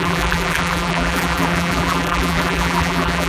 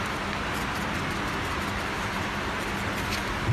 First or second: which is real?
second